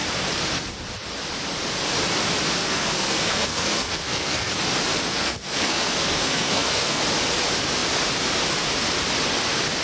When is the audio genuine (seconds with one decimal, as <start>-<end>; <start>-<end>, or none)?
0.0-2.6; 4.5-5.1; 7.0-9.8